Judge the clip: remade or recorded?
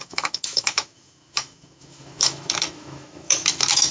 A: remade